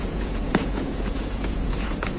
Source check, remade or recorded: remade